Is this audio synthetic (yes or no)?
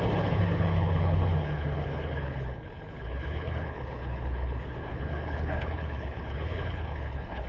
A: yes